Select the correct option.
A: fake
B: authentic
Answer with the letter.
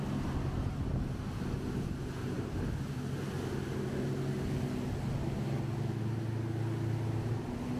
B